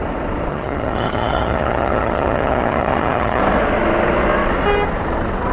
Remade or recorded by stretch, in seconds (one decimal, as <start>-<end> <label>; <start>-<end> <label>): 0.0-0.5 recorded; 0.5-3.4 remade; 3.4-5.5 recorded